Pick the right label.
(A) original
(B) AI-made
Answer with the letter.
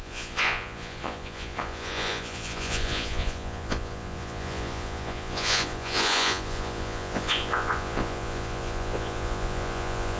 B